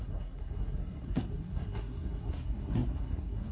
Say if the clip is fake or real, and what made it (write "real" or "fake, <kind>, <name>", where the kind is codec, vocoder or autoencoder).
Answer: fake, codec, SNAC